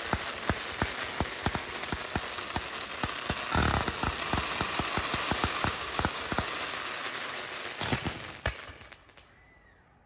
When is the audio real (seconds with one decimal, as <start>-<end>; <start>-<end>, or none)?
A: 0.0-5.4; 6.2-10.1